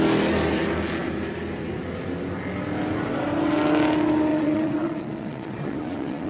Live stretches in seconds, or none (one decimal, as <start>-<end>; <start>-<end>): 0.0-4.3